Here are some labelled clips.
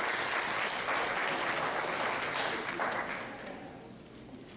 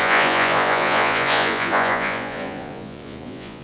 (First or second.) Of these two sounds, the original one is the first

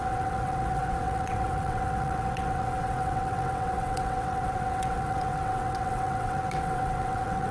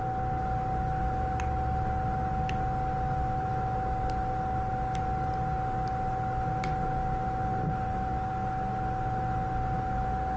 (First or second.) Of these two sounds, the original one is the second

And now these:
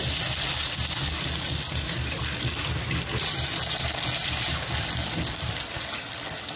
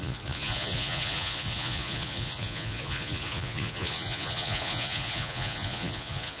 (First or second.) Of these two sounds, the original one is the first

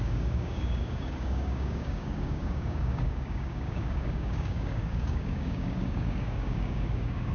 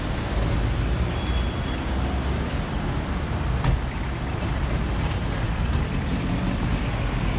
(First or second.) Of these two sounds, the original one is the second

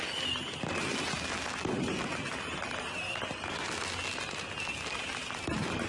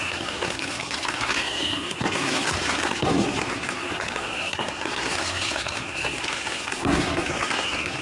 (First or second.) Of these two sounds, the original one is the first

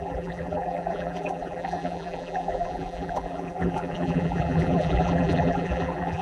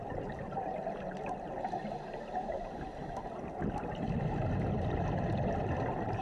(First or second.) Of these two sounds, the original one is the second